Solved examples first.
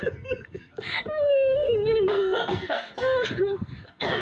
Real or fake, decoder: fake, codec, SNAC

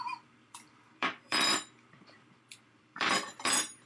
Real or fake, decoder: fake, vocoder, BigVGAN v2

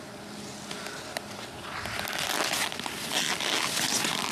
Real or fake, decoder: real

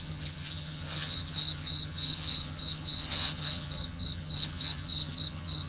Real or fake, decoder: fake, vocoder, HiFi-GAN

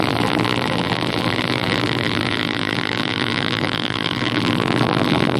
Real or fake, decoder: fake, vocoder, BigVGAN v2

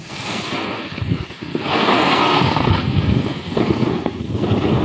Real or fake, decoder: fake, codec, SNAC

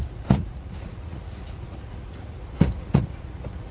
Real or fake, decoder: fake, vocoder, Vocos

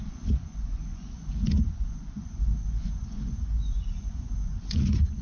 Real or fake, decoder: fake, vocoder, Vocos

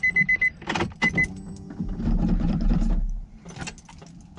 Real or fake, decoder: real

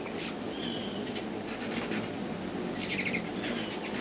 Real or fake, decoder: real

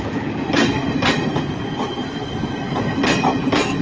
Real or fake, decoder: real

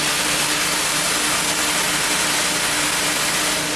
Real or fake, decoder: real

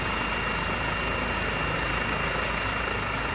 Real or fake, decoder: real